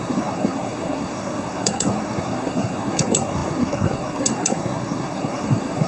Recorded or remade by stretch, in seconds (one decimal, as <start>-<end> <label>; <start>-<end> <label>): 0.0-5.9 remade